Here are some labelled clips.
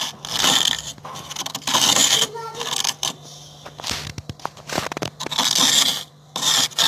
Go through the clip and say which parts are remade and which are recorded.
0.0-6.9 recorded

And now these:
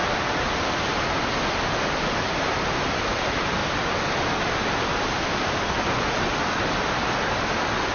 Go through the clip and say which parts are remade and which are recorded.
0.0-7.9 recorded

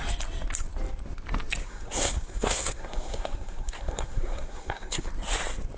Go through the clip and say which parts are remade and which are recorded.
0.0-1.6 recorded; 1.6-5.1 remade; 5.1-5.8 recorded

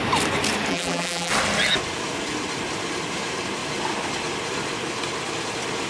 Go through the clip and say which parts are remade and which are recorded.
0.0-0.7 recorded; 0.7-1.3 remade; 1.3-5.9 recorded

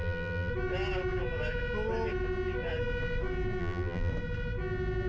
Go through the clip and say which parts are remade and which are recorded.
0.0-0.5 remade; 0.5-3.6 recorded; 3.6-4.1 remade; 4.1-5.1 recorded

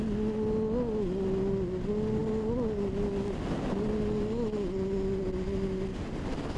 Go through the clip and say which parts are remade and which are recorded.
0.0-6.6 recorded